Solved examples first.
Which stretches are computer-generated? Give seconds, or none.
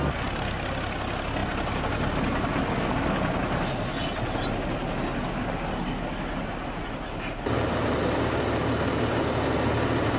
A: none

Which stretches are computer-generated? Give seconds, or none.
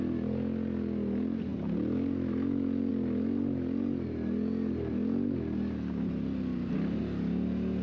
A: none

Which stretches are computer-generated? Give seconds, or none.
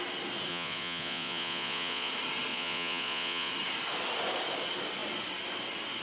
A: 0.5-2.1; 2.5-3.5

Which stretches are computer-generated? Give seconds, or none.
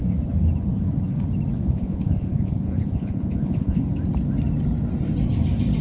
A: 1.6-3.8